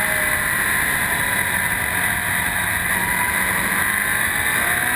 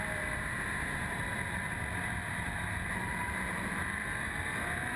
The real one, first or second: first